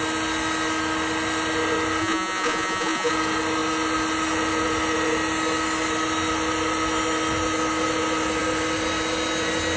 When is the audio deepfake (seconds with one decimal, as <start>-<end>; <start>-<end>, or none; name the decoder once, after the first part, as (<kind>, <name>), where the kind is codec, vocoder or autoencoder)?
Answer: 2.0-3.1 (vocoder, Vocos)